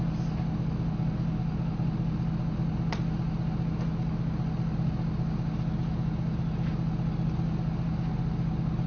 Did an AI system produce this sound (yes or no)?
no